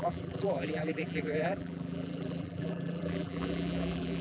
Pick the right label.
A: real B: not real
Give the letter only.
B